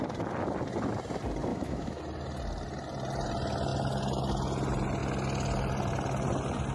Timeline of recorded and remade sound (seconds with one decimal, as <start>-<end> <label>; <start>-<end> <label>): 0.0-1.5 recorded; 1.5-2.0 remade; 2.0-6.7 recorded